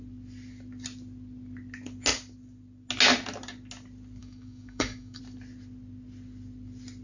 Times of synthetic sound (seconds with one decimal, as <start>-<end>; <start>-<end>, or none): 4.2-5.2